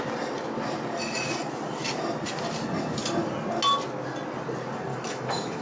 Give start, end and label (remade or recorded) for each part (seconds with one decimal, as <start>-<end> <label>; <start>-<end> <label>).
0.0-4.9 recorded; 4.9-5.6 remade